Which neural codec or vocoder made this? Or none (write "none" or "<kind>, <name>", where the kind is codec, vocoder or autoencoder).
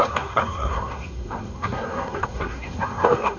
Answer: codec, SNAC